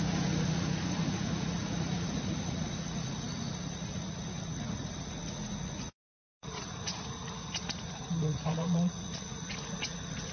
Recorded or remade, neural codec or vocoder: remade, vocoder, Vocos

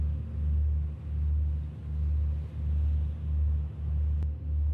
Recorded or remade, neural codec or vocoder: recorded